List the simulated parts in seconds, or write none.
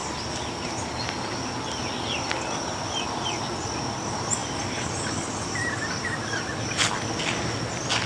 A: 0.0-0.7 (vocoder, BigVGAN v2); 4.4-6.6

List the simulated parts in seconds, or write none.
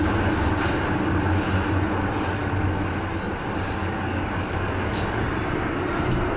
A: 2.4-3.0 (codec, DAC); 3.8-5.2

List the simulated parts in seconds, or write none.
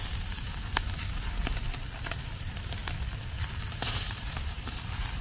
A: 0.0-1.4 (vocoder, BigVGAN v2); 2.3-2.8; 3.7-5.2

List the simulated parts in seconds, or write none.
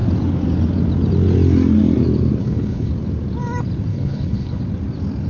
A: 2.4-2.9 (codec, HILCodec); 3.9-4.6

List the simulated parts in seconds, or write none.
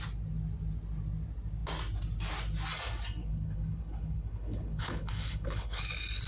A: 3.2-5.8 (codec, HILCodec)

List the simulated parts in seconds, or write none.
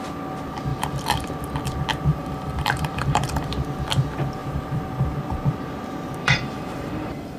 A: 0.7-1.3 (vocoder, BigVGAN v2); 2.1-3.5; 6.2-7.4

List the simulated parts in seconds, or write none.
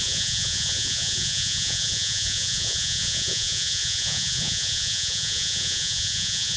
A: 0.0-6.6 (vocoder, Vocos)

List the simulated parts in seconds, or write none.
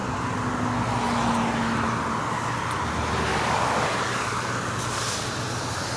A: 3.3-5.3 (codec, DAC)